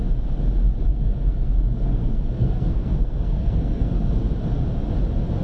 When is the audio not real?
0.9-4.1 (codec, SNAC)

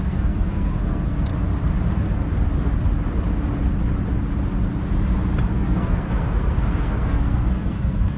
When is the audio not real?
0.0-1.3 (codec, SNAC); 5.5-8.2